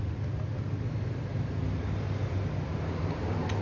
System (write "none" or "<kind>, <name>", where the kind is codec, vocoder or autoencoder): none